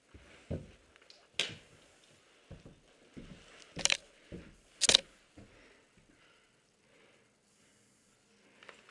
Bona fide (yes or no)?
yes